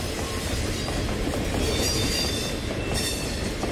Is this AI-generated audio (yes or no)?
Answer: yes